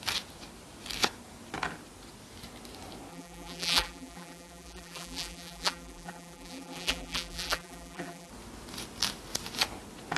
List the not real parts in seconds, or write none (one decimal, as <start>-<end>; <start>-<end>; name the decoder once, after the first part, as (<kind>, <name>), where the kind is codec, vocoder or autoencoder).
3.1-8.3 (vocoder, BigVGAN v2)